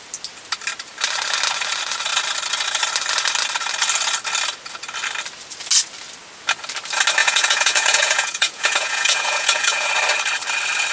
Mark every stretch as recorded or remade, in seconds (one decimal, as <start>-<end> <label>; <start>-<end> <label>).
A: 0.0-7.2 recorded; 7.2-9.9 remade; 9.9-10.9 recorded